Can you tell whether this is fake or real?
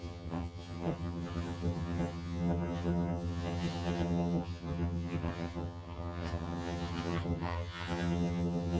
fake